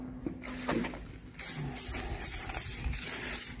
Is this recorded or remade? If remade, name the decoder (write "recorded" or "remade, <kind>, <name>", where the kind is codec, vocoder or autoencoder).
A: recorded